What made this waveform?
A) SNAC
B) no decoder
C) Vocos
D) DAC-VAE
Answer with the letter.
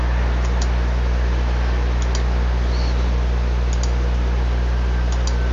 B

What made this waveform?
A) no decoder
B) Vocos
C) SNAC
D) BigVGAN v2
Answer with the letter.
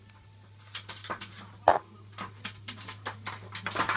A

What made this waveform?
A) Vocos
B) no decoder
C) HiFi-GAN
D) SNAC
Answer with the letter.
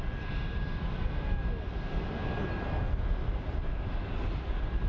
B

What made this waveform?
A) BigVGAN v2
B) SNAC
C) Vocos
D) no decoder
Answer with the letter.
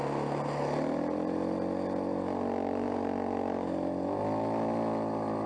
D